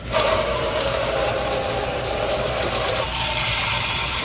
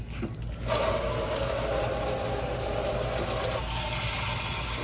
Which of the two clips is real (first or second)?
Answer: second